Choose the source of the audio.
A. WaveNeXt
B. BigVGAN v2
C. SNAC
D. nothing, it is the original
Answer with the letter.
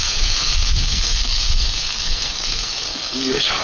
C